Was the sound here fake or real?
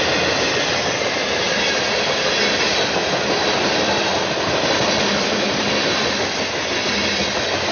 real